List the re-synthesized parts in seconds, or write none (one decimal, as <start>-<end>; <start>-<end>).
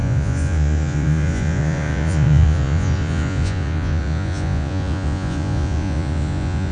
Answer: 0.0-6.7